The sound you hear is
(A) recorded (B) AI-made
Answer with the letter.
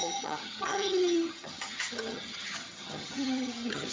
B